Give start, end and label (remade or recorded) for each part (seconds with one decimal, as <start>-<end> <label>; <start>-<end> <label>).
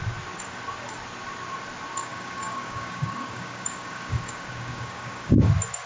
0.0-2.0 recorded; 2.0-5.5 remade; 5.5-5.9 recorded